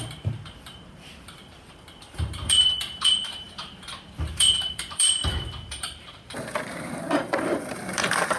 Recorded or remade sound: remade